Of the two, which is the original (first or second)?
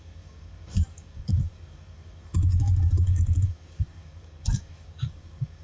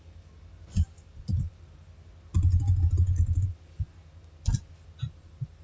second